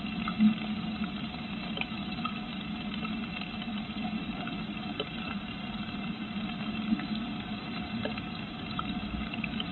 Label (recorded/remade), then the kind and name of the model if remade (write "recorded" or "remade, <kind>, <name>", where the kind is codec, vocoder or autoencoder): recorded